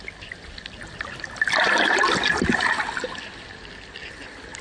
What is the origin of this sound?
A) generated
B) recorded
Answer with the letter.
B